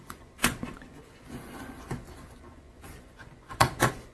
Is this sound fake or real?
fake